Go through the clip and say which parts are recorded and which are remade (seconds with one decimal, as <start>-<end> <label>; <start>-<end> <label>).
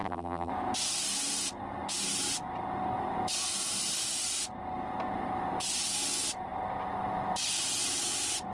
0.0-0.5 remade; 0.5-8.5 recorded